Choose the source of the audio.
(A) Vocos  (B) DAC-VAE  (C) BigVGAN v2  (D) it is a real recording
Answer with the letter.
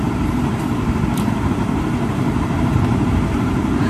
C